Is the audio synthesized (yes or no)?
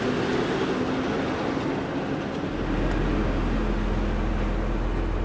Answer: no